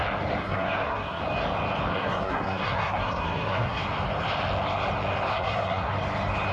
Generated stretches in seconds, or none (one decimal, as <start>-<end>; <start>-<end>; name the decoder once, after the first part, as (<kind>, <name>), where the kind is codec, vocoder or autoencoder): 0.4-1.2 (codec, SNAC); 1.9-3.8; 5.3-5.9